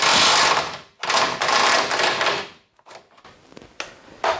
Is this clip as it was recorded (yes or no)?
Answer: yes